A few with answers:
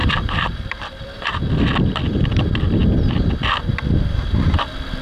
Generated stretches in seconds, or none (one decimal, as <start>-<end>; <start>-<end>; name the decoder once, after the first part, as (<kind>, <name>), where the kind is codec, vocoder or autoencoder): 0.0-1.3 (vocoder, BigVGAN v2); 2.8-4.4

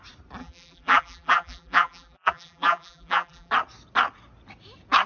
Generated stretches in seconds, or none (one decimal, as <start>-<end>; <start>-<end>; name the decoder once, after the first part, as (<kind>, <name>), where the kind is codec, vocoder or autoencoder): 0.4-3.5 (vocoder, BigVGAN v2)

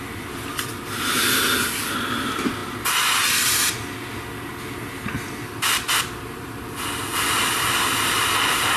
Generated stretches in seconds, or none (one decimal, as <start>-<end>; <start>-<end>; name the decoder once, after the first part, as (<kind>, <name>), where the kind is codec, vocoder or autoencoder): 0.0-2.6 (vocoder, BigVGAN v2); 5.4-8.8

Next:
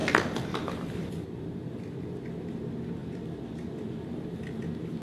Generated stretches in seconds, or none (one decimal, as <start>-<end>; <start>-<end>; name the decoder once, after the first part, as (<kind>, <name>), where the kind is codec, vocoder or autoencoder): 0.0-1.7 (vocoder, BigVGAN v2); 3.0-4.4

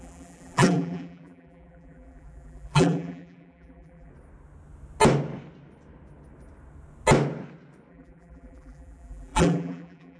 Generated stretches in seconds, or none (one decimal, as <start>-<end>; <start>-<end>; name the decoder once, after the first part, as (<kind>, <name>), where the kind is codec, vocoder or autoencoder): 0.0-4.1 (vocoder, BigVGAN v2); 7.9-10.2

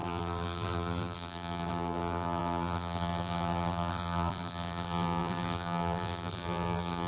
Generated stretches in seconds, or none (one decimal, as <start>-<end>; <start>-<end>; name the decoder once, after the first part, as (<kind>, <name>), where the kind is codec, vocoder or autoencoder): 0.0-7.1 (vocoder, BigVGAN v2)

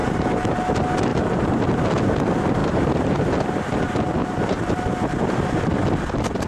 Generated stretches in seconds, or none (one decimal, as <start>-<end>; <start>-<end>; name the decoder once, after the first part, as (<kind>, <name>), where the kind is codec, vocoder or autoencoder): 0.0-0.6 (vocoder, BigVGAN v2); 1.1-1.6; 2.6-3.3; 4.2-5.6

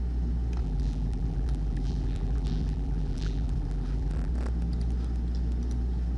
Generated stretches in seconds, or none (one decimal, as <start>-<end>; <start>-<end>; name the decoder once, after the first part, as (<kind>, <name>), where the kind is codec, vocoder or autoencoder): 0.6-4.3 (vocoder, BigVGAN v2)